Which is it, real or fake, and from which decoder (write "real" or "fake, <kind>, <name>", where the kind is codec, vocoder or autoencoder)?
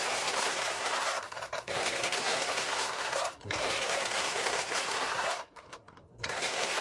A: fake, codec, SNAC